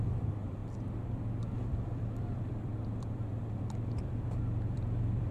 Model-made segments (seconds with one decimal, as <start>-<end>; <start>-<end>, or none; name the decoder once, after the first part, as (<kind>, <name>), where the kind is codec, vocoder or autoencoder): 0.0-5.3 (vocoder, BigVGAN v2)